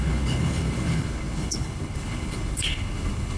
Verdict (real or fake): fake